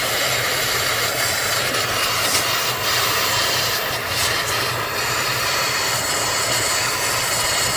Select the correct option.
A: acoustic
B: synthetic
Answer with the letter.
A